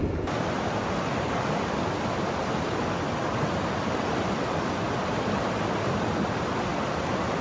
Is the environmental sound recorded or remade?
recorded